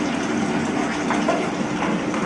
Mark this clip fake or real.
real